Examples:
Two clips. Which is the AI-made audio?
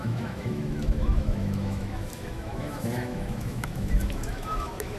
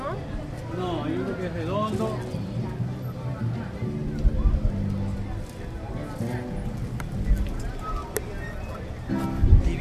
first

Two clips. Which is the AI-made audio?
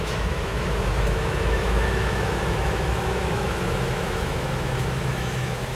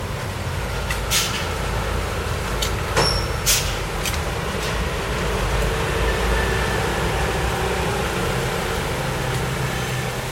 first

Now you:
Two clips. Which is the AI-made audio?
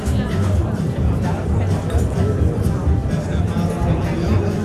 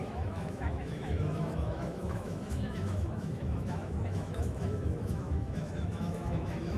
second